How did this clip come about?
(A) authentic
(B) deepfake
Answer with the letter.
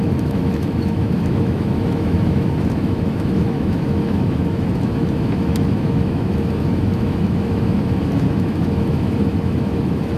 B